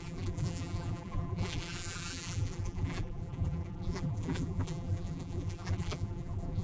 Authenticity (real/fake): fake